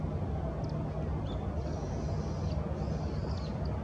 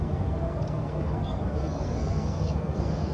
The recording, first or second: first